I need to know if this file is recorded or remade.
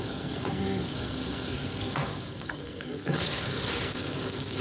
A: remade